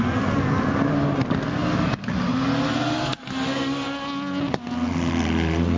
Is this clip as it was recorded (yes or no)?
yes